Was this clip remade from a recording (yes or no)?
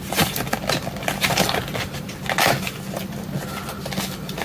no